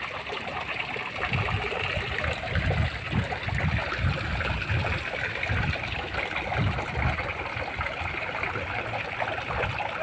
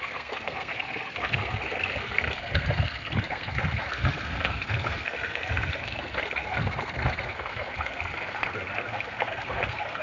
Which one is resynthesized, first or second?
second